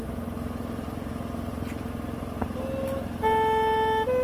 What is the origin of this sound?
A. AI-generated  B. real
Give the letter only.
B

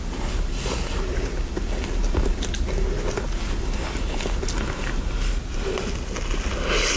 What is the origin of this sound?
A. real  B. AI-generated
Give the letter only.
A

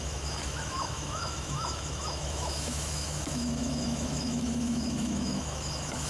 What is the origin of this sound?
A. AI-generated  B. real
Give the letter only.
A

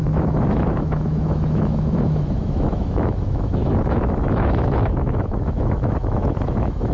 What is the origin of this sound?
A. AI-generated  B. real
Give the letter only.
A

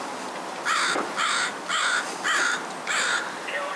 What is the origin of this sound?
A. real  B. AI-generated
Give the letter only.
A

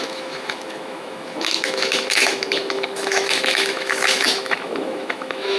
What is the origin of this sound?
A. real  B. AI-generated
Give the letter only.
B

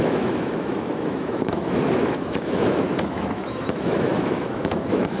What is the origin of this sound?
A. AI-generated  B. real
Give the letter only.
A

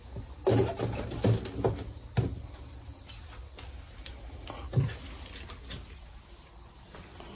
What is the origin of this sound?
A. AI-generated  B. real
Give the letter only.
B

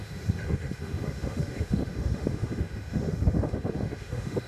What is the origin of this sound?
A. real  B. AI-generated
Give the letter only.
B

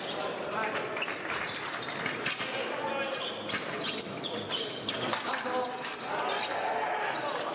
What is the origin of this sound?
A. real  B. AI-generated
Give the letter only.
A